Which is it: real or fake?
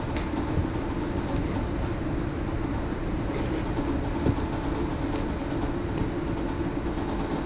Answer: real